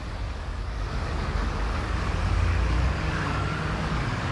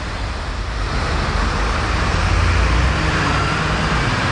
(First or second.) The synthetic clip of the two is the first